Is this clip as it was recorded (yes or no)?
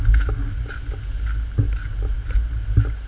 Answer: yes